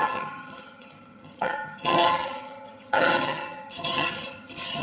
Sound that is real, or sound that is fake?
fake